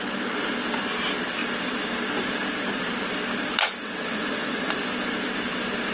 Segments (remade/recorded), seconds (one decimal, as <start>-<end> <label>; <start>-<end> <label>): 0.0-3.8 recorded; 3.8-4.8 remade; 4.8-5.9 recorded